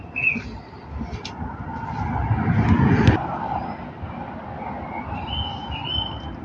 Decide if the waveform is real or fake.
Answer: real